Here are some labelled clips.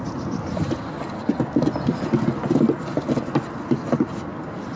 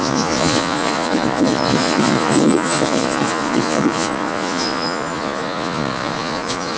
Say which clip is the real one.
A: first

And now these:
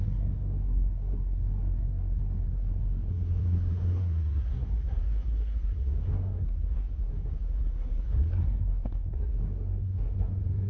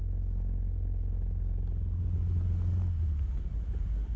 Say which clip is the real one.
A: second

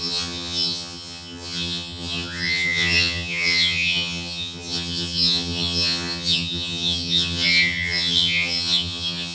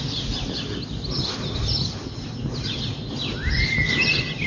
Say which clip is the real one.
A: second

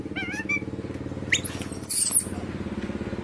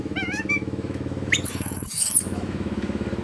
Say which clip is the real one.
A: first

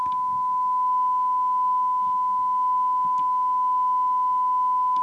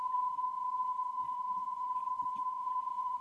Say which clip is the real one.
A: first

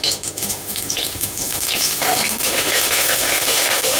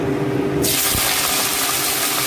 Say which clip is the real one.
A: second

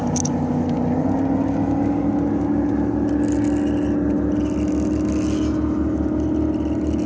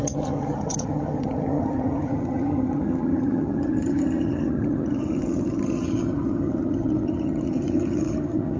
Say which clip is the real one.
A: first